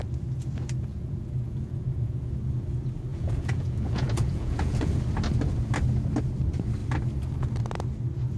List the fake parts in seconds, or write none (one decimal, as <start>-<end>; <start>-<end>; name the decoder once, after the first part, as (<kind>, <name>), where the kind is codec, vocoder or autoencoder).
0.9-2.3 (vocoder, Vocos); 3.1-4.9